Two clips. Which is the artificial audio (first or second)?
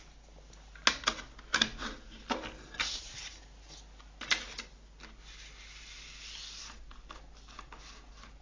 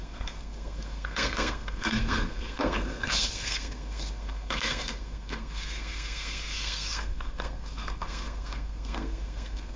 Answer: second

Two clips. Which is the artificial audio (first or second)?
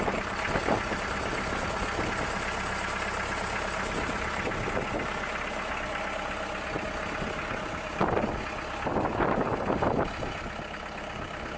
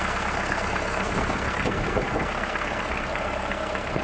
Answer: second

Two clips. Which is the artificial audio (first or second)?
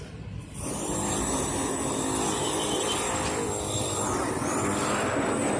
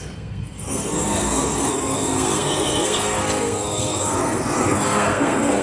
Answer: second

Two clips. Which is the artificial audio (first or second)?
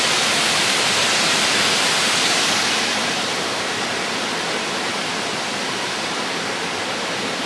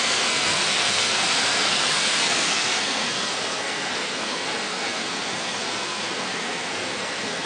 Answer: second